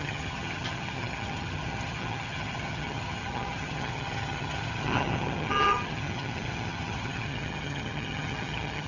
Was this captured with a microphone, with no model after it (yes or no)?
no